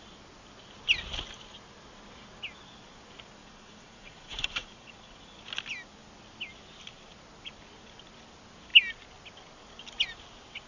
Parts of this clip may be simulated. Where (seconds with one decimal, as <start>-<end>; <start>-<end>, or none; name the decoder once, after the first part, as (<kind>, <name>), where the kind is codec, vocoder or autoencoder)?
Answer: 3.4-5.4 (vocoder, Vocos)